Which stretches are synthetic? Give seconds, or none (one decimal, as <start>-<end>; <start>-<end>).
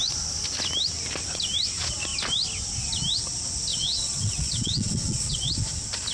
3.7-5.5